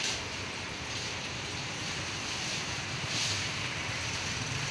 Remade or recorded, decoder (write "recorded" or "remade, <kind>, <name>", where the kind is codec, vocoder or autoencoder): remade, vocoder, BigVGAN v2